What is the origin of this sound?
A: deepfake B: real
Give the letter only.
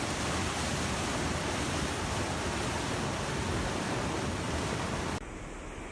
B